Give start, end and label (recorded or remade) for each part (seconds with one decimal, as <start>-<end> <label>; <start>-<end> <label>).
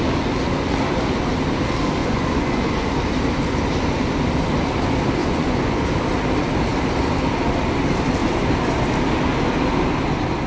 0.0-2.0 recorded; 2.0-2.9 remade; 2.9-5.2 recorded; 5.2-5.8 remade; 5.8-10.5 recorded